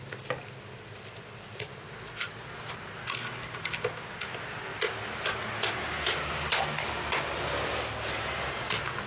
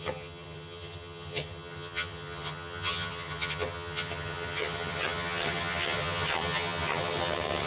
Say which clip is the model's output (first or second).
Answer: second